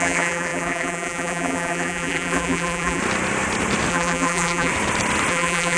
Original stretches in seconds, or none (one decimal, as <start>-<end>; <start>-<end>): 3.0-3.9; 4.7-5.3